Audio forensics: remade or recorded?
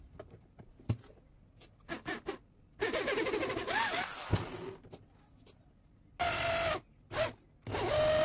recorded